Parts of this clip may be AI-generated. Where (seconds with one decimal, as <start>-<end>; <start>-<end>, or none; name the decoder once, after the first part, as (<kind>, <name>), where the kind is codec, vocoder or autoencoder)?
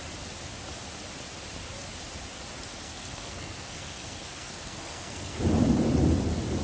2.7-5.4 (codec, SNAC)